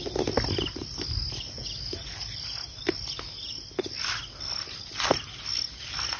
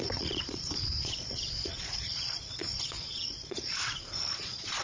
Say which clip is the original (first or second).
first